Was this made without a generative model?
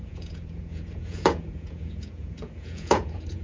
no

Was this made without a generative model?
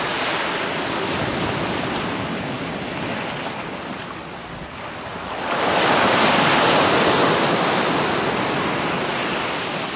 yes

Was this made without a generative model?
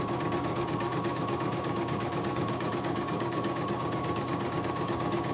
no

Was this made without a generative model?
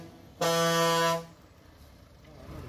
yes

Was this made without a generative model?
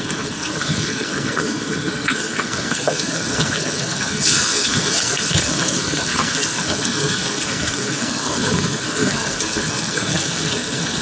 no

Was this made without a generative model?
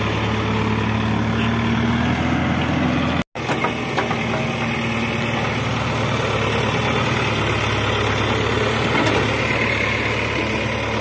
yes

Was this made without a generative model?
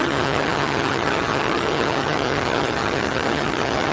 no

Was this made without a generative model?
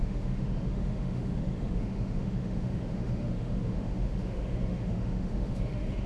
no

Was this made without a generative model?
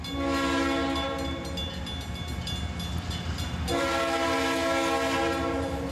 yes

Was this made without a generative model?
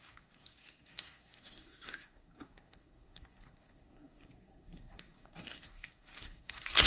no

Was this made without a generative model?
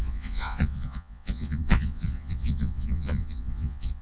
no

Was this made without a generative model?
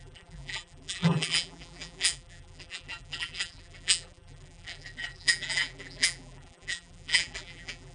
no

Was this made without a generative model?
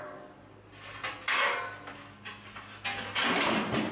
yes